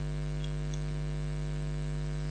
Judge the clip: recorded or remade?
recorded